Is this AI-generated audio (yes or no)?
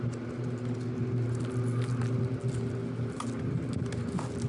no